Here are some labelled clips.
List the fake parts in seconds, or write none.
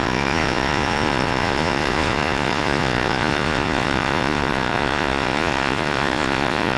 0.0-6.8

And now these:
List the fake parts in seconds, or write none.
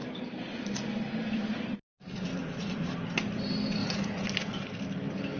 2.4-2.9; 3.8-4.3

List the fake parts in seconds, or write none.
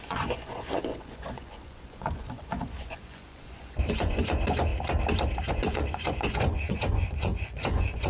0.0-4.7; 5.5-8.1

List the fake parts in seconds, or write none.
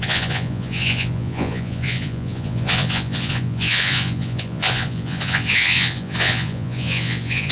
0.0-7.5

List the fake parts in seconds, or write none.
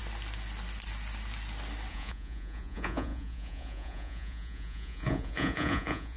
1.9-6.2